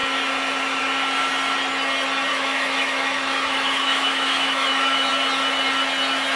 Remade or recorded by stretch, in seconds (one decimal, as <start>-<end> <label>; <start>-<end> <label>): 0.0-2.3 recorded; 2.3-5.1 remade; 5.1-6.4 recorded